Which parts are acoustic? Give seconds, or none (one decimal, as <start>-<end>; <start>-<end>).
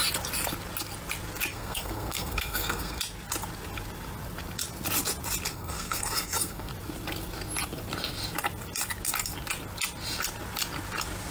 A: 0.0-1.5; 3.0-5.5; 6.7-11.3